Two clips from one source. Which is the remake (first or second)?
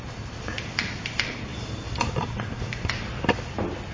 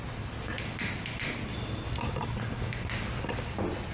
first